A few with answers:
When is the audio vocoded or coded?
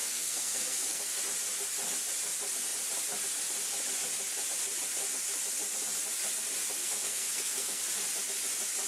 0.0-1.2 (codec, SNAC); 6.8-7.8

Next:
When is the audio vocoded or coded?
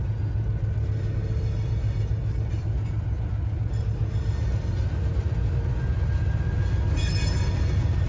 none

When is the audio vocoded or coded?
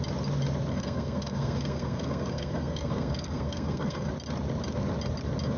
0.7-4.1 (codec, SNAC)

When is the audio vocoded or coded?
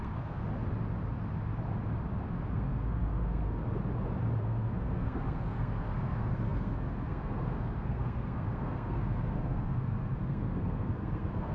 0.0-0.4 (codec, SNAC); 2.5-3.6; 4.4-11.5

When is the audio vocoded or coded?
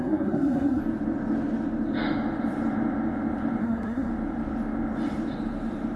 0.0-0.8 (codec, SNAC); 3.6-4.1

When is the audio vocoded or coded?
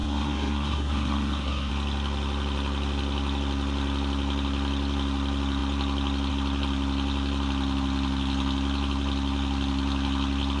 0.0-1.7 (codec, SNAC)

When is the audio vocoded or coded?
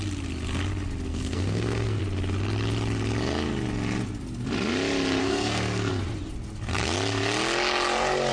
1.1-2.0 (codec, SNAC); 5.2-5.9